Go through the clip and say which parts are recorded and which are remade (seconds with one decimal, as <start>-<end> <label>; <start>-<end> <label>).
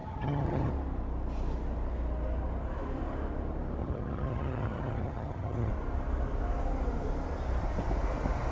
0.0-0.7 remade; 0.7-3.8 recorded; 3.8-5.7 remade; 5.7-8.5 recorded